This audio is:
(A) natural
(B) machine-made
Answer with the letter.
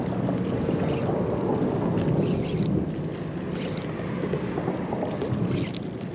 A